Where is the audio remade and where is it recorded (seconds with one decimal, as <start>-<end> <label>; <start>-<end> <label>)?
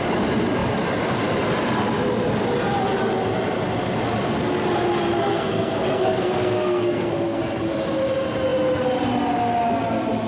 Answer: 0.0-5.3 recorded; 5.3-7.4 remade; 7.4-10.3 recorded